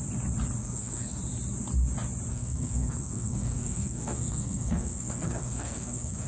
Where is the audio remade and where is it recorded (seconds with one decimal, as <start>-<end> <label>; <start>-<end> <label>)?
0.0-0.6 recorded; 0.6-1.2 remade; 1.2-2.3 recorded; 2.3-6.3 remade